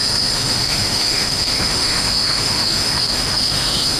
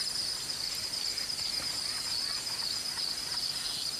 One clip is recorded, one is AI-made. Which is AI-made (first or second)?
first